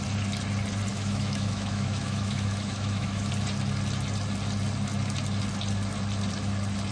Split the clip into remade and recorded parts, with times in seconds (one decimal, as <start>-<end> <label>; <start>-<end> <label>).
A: 0.0-0.9 recorded; 0.9-3.3 remade; 3.3-6.9 recorded

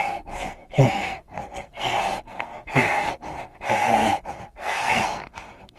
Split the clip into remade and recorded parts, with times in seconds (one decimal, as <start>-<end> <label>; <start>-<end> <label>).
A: 0.0-5.8 remade

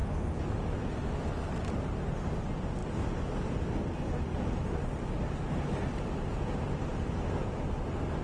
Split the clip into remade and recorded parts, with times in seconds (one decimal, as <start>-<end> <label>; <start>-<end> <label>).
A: 0.0-8.2 recorded

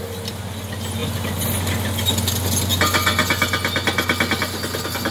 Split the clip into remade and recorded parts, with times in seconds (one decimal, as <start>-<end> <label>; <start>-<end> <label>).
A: 0.0-5.1 recorded

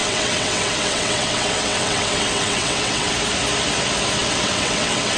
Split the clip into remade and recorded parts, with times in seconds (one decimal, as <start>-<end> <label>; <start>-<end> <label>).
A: 0.0-3.1 remade; 3.1-4.2 recorded; 4.2-5.2 remade

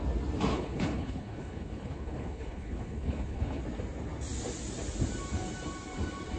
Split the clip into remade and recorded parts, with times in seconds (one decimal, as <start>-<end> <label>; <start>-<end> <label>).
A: 0.0-0.5 recorded; 0.5-3.6 remade; 3.6-6.4 recorded

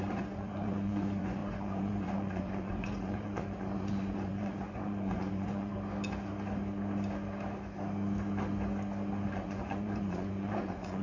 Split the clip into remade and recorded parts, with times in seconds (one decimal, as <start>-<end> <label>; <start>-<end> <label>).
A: 0.0-5.7 remade; 5.7-9.3 recorded; 9.3-11.0 remade